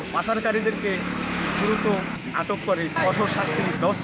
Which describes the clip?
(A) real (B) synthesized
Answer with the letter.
B